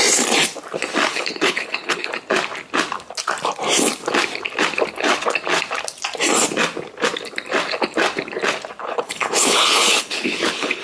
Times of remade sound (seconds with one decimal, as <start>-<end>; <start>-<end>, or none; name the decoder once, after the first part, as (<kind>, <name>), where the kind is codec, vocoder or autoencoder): 1.1-2.1 (codec, HILCodec); 8.8-10.8